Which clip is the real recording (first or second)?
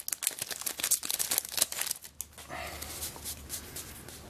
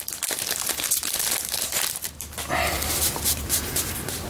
first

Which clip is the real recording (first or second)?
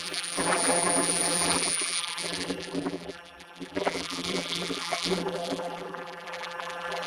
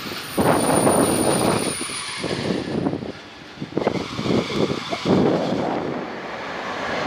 second